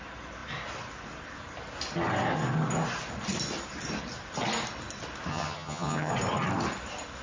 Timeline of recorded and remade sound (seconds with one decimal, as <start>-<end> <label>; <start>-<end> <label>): 0.0-5.3 recorded; 5.3-6.1 remade; 6.1-7.2 recorded